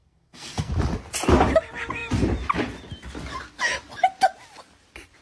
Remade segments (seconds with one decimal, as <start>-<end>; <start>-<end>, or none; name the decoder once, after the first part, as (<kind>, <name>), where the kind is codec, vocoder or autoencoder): 0.0-0.7 (codec, SNAC)